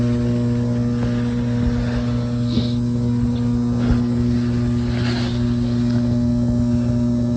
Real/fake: real